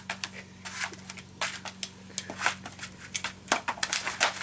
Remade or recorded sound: recorded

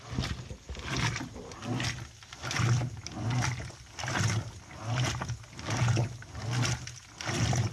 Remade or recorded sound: recorded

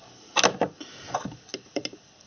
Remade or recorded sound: recorded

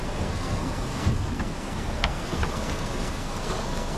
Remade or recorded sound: remade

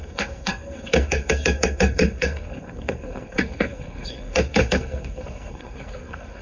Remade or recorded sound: remade